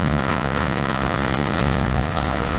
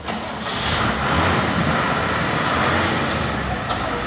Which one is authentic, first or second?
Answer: second